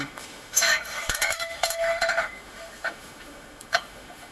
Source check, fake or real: fake